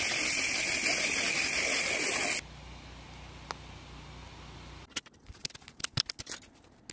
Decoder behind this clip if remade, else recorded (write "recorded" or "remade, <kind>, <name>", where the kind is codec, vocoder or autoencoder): recorded